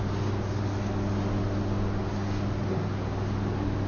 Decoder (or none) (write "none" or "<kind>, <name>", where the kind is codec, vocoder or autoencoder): none